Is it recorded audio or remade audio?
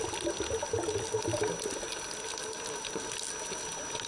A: recorded